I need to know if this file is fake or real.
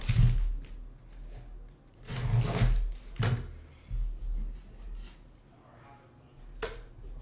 real